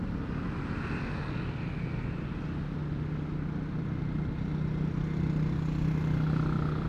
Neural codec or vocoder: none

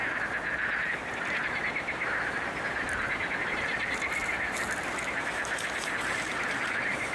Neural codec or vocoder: none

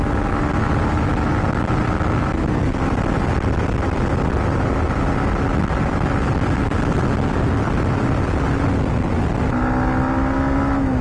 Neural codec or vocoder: none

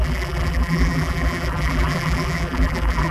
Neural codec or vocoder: vocoder, BigVGAN v2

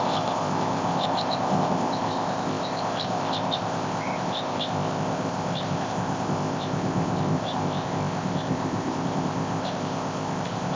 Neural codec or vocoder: codec, ZipCodec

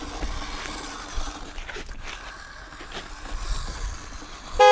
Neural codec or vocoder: none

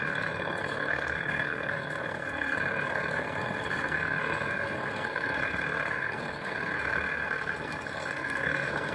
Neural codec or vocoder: codec, SNAC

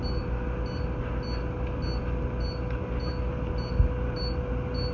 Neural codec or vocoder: none